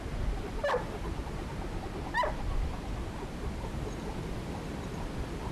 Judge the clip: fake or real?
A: real